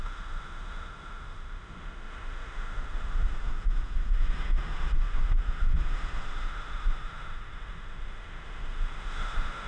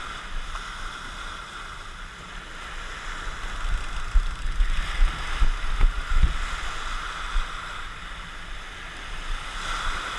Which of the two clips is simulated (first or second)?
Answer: first